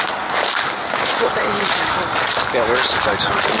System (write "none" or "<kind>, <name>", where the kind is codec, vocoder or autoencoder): none